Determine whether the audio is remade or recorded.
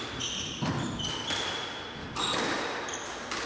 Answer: recorded